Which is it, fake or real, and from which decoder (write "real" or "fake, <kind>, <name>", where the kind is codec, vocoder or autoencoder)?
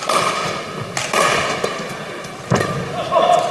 real